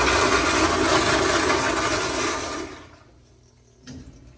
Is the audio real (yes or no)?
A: yes